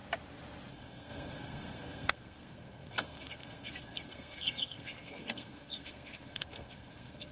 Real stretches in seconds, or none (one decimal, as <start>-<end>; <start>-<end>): 0.0-0.7